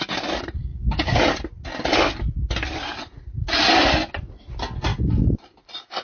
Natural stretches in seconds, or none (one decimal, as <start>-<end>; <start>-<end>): 0.0-0.7; 1.2-6.0